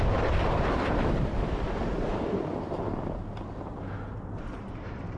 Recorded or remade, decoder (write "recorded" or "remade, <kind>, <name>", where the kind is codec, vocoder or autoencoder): remade, vocoder, BigVGAN v2